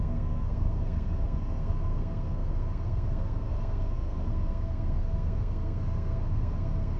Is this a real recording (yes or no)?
no